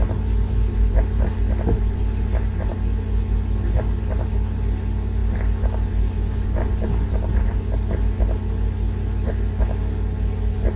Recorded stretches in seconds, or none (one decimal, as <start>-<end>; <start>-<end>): 0.0-10.8